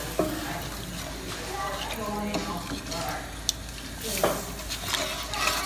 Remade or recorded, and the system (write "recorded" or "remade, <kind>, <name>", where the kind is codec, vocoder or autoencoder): recorded